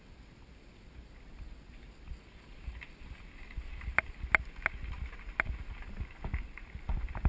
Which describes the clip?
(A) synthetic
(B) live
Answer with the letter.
B